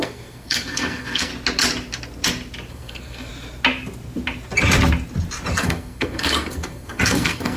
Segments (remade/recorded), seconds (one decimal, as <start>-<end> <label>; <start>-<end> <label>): 0.0-1.3 remade; 1.3-2.7 recorded; 2.7-3.3 remade; 3.3-5.5 recorded; 5.5-7.6 remade